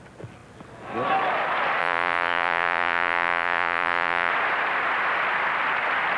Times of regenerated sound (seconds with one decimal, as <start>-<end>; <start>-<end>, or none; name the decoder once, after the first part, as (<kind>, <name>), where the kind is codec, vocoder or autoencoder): 1.8-4.3 (vocoder, Vocos)